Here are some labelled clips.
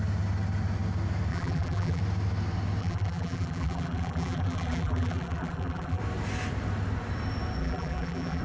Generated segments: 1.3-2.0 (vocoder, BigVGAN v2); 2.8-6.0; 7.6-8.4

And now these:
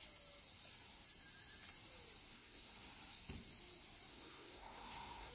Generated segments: 2.3-2.9 (codec, SNAC); 4.1-5.3

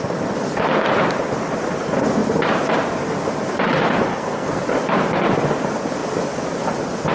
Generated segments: 4.1-4.6 (codec, SNAC)

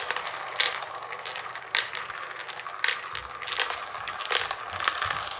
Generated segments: 0.0-2.4 (vocoder, BigVGAN v2)

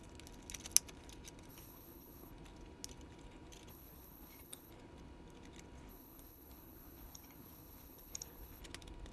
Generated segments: 1.5-2.3 (codec, HILCodec); 3.7-4.7; 5.9-8.6

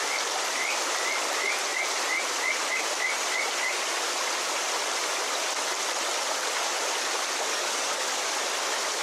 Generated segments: 7.5-8.3 (codec, DAC)